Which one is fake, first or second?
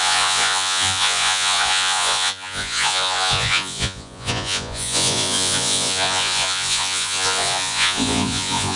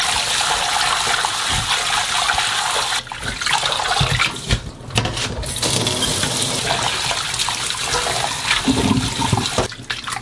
first